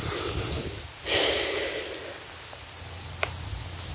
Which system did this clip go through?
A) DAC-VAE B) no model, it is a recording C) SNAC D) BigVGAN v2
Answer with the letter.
B